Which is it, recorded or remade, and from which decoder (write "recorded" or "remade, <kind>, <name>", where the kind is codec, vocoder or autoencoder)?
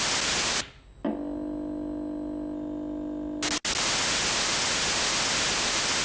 recorded